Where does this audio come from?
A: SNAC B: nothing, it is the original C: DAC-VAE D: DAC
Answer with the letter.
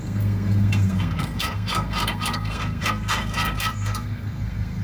A